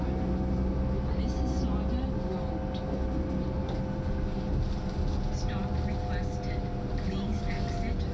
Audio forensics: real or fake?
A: real